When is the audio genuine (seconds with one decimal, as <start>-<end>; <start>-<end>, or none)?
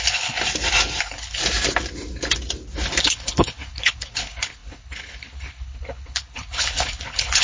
0.4-1.0; 1.4-3.0